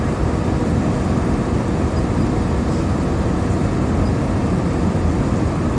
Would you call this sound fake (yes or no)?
no